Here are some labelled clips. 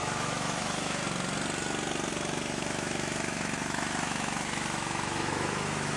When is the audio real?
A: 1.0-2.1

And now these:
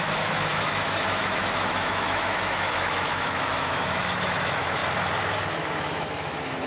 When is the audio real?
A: 4.8-5.5

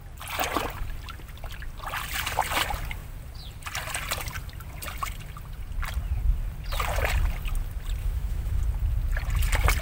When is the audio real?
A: 0.0-8.0; 8.6-9.8

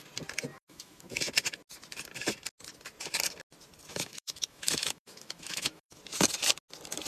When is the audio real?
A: 0.0-0.5; 1.2-3.9; 6.0-7.1

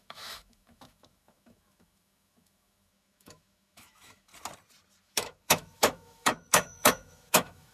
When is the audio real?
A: 4.3-5.0

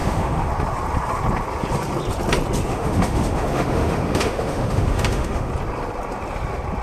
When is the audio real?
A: 0.5-2.7; 5.5-6.8

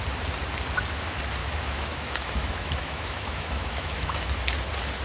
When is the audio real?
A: 0.0-1.4; 4.4-5.0

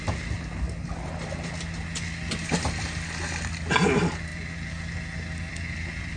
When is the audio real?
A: 0.0-6.2